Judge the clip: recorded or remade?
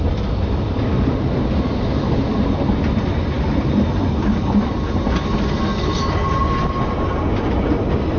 recorded